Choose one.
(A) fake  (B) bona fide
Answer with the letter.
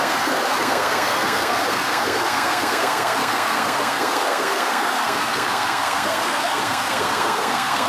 A